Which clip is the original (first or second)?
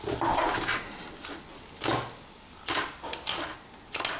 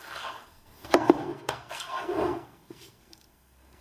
first